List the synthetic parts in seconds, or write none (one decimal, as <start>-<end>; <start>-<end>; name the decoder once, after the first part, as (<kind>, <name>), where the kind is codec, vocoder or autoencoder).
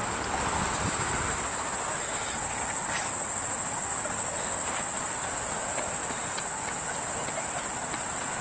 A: none